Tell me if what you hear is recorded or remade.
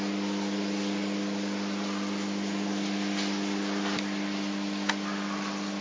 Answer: recorded